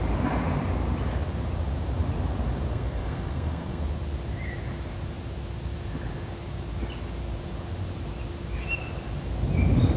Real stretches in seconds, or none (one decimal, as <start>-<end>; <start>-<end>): 0.0-2.7; 3.8-10.0